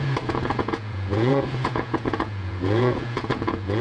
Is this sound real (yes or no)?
no